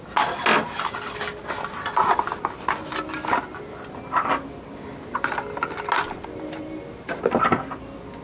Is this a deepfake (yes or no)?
no